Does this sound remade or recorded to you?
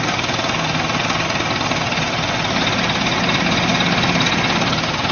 recorded